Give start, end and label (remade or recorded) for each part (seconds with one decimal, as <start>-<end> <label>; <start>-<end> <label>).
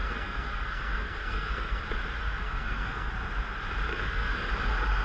0.0-1.8 remade; 1.8-2.2 recorded; 2.2-3.1 remade; 3.1-3.9 recorded; 3.9-4.5 remade; 4.5-5.0 recorded